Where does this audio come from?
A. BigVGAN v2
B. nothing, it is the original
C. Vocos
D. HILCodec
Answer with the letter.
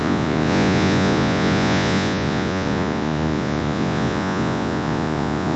C